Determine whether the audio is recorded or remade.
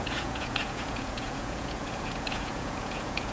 remade